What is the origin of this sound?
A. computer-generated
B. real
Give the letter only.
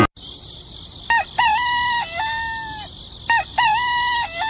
B